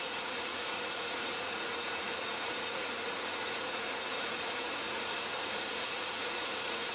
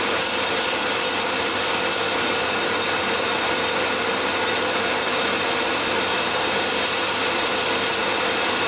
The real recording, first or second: second